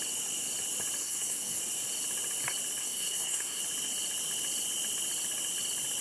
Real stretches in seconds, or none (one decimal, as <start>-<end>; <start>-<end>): 0.0-1.0; 1.6-2.8; 3.6-6.0